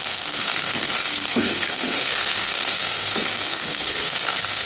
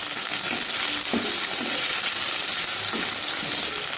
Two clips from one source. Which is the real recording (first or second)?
second